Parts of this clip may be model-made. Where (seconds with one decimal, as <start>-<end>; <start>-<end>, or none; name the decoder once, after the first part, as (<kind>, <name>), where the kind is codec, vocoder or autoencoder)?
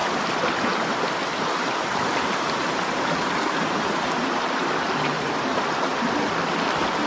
1.4-5.9 (vocoder, BigVGAN v2)